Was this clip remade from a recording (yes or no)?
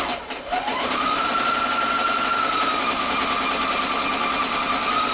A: no